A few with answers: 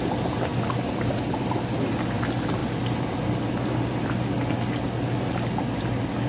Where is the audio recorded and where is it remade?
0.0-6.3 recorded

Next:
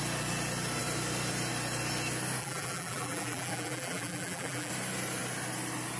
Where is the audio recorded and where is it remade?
0.0-2.4 recorded; 2.4-4.7 remade; 4.7-6.0 recorded

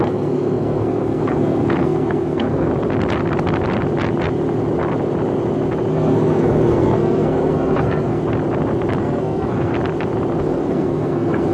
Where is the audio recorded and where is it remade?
0.0-2.7 remade; 2.7-5.9 recorded; 5.9-8.2 remade; 8.2-9.0 recorded; 9.0-9.7 remade; 9.7-10.4 recorded; 10.4-11.5 remade

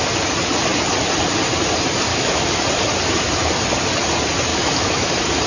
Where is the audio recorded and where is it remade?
0.0-2.1 recorded; 2.1-2.6 remade; 2.6-4.5 recorded; 4.5-5.1 remade; 5.1-5.5 recorded